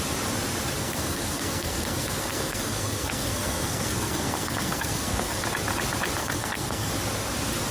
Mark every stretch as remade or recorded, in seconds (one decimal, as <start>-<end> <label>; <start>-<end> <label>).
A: 0.0-0.8 recorded; 0.8-5.4 remade; 5.4-6.2 recorded; 6.2-6.9 remade; 6.9-7.7 recorded